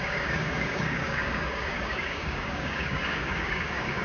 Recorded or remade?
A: remade